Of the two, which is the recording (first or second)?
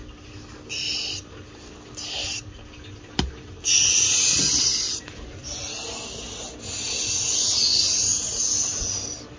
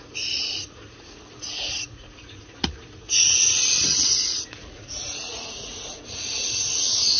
first